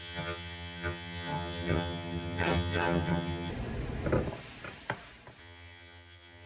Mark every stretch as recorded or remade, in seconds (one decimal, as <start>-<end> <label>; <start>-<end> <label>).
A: 0.0-3.5 remade; 3.5-5.4 recorded; 5.4-6.5 remade